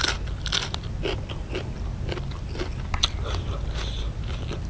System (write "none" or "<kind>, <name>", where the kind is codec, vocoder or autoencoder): none